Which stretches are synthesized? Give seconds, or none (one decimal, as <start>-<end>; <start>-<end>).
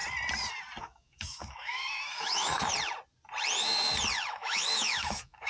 0.8-2.7; 4.3-5.5